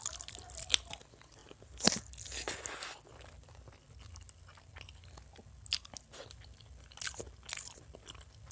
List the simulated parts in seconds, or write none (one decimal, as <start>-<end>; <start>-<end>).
none